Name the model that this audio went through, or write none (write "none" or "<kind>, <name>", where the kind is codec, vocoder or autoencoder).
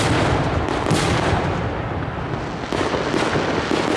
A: none